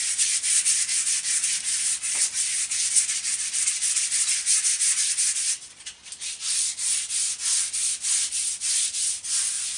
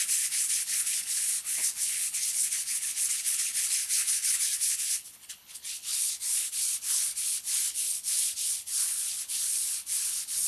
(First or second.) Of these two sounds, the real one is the first